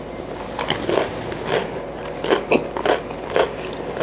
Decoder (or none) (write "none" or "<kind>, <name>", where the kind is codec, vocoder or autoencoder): none